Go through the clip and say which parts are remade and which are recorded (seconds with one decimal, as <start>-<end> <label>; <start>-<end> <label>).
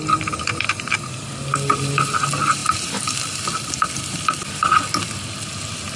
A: 0.0-6.0 recorded